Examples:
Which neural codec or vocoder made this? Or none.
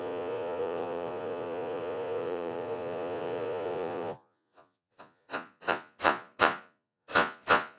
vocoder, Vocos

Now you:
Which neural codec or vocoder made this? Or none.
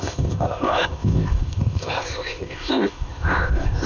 codec, ZipCodec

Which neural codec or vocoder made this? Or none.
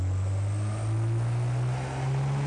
none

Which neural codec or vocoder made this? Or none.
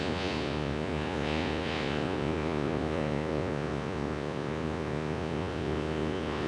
vocoder, Vocos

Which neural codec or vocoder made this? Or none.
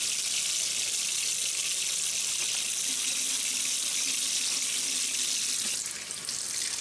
none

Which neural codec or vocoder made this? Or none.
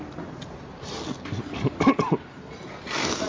none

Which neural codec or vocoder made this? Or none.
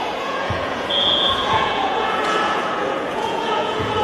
vocoder, Vocos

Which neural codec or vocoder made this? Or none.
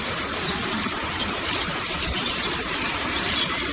vocoder, BigVGAN v2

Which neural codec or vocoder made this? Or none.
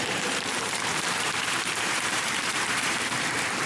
vocoder, BigVGAN v2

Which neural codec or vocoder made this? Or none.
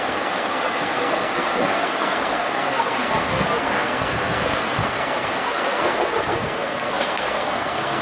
codec, SNAC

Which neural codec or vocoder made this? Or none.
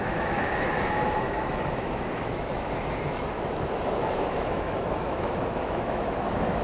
autoencoder, DAC-VAE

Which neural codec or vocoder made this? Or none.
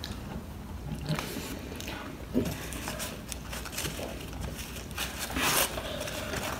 vocoder, BigVGAN v2